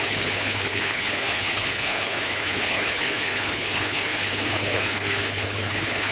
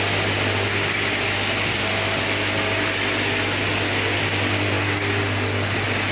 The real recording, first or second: second